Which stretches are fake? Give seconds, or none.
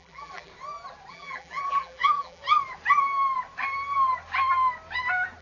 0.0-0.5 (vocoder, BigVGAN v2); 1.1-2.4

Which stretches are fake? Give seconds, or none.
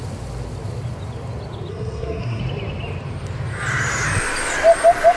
1.7-2.4 (codec, SNAC)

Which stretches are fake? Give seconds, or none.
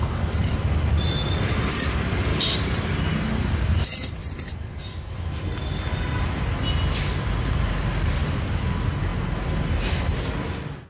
2.3-3.8 (vocoder, BigVGAN v2); 4.2-4.8